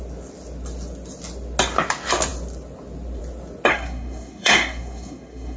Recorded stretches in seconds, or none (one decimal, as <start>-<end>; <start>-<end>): 0.0-3.7